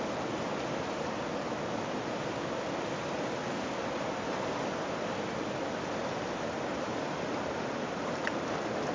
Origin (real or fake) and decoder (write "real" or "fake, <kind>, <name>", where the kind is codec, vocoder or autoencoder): real